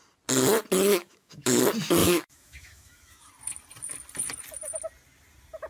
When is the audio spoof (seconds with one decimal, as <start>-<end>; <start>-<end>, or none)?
0.9-1.6; 2.0-3.3